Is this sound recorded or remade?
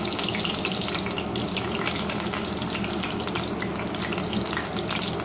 recorded